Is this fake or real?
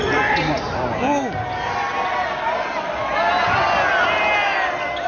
real